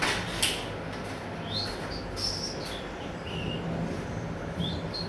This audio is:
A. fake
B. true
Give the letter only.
B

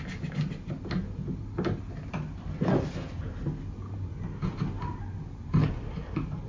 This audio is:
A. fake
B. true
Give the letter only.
B